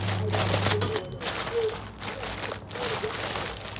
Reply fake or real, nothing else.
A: real